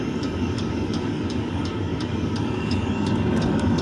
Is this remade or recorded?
remade